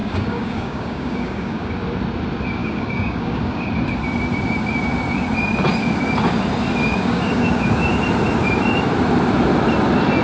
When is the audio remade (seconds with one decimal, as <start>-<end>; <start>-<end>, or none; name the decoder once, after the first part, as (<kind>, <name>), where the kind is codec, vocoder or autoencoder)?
0.0-1.7 (codec, DAC); 2.6-3.7; 6.8-8.0